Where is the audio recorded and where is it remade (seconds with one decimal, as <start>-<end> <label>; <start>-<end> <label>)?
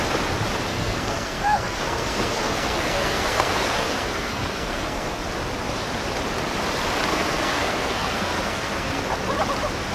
0.0-0.7 recorded; 0.7-5.3 remade; 5.3-7.1 recorded; 7.1-9.0 remade; 9.0-9.9 recorded